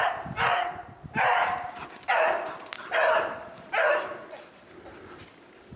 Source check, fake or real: real